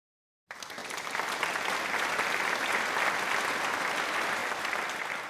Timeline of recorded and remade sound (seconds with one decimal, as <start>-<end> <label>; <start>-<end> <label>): 0.0-0.8 remade; 0.8-4.0 recorded; 4.0-4.4 remade; 4.4-5.3 recorded